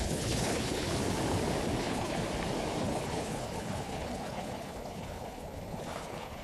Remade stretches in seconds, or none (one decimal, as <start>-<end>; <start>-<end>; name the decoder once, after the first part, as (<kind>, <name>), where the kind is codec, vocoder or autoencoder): 0.0-1.0 (codec, HILCodec); 1.8-2.2; 2.8-6.4